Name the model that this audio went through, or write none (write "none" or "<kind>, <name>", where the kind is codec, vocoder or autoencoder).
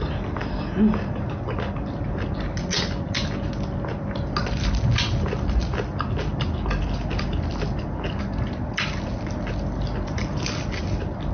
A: none